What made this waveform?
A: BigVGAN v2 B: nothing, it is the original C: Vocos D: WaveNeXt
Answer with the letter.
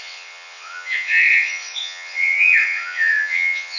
D